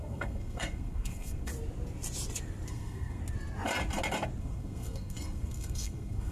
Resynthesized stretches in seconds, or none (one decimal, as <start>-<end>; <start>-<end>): 0.0-1.5; 2.7-3.2; 4.4-6.3